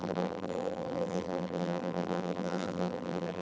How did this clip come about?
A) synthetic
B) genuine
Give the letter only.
A